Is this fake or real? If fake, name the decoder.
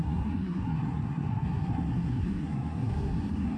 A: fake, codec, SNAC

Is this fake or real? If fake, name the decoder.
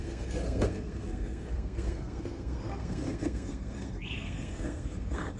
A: fake, codec, SNAC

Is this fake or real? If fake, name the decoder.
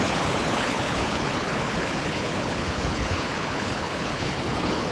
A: fake, codec, HILCodec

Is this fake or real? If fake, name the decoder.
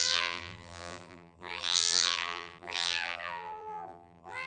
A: fake, vocoder, BigVGAN v2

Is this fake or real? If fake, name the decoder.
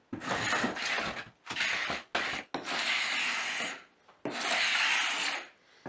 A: real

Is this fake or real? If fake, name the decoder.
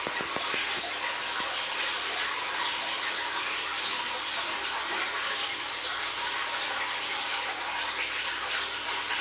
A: real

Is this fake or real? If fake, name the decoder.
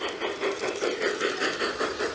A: real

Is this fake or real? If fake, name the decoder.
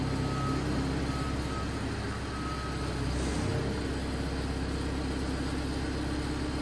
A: real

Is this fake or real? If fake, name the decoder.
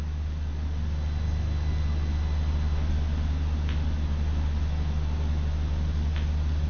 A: real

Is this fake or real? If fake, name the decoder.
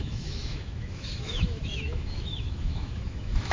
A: fake, autoencoder, DAC-VAE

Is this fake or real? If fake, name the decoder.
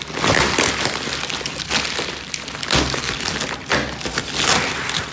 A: real